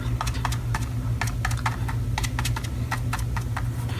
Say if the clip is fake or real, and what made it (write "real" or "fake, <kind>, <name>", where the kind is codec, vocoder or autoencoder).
real